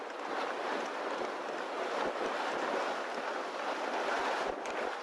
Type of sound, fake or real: real